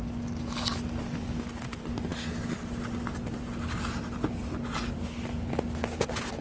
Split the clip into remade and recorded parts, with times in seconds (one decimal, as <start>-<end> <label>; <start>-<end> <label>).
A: 0.0-6.4 recorded